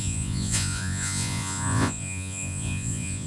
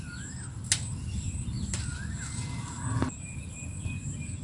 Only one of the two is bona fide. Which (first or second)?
second